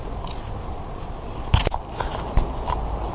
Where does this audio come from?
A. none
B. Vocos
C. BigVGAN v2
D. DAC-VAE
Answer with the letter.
A